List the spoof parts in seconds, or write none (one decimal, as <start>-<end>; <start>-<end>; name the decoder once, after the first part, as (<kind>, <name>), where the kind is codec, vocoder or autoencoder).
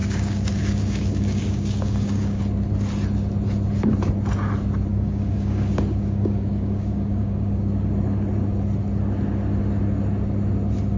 0.0-2.4 (codec, DAC); 4.9-7.7